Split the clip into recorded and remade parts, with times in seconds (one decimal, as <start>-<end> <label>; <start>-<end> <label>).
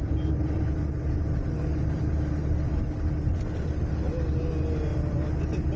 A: 0.0-5.8 recorded